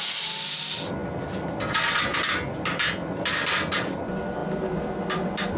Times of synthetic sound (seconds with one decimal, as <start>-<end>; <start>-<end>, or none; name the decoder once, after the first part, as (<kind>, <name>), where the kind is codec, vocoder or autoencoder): none